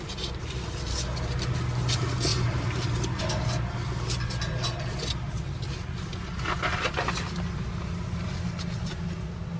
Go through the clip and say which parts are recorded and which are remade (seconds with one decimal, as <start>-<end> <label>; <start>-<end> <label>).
0.0-2.3 recorded; 2.3-3.2 remade; 3.2-9.6 recorded